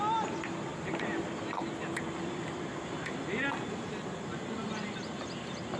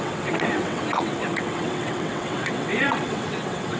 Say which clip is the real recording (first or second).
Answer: first